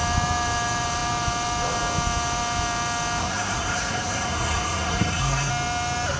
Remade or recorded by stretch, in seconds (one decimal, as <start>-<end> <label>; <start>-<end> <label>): 0.0-3.2 recorded; 3.2-5.5 remade; 5.5-6.2 recorded